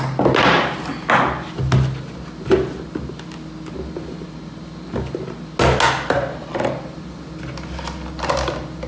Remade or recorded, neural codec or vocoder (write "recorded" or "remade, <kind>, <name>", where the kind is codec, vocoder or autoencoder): recorded